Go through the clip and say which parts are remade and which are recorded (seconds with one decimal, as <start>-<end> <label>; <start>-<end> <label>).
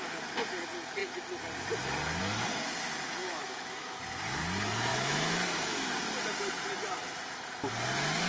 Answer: 0.0-3.2 recorded; 3.2-3.9 remade; 3.9-4.9 recorded; 4.9-5.9 remade; 5.9-8.3 recorded